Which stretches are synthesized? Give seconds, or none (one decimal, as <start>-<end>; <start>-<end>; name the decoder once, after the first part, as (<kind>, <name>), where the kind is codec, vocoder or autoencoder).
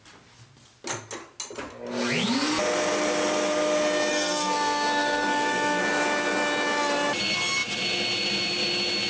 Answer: 4.1-5.8 (codec, SNAC)